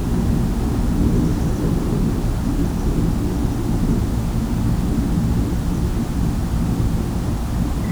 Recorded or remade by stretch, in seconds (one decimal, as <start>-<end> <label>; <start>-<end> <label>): 0.0-2.5 remade; 2.5-7.9 recorded